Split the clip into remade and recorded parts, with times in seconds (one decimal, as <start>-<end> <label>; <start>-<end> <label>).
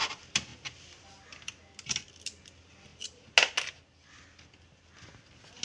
0.0-5.6 recorded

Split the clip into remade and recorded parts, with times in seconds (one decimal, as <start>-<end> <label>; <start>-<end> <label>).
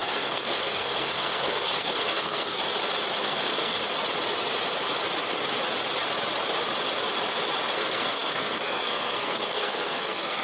0.0-2.6 remade; 2.6-3.2 recorded; 3.2-3.8 remade; 3.8-7.7 recorded; 7.7-10.4 remade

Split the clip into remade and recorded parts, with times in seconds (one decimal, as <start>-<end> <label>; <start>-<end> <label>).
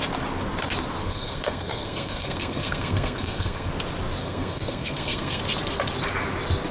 0.0-1.0 recorded; 1.0-3.7 remade; 3.7-4.2 recorded; 4.2-5.4 remade; 5.4-6.7 recorded